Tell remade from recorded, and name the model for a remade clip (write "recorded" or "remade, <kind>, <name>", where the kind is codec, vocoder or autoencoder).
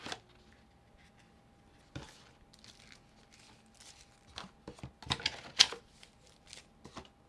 recorded